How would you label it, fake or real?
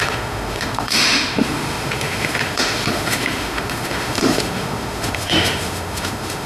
fake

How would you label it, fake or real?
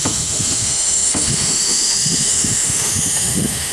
fake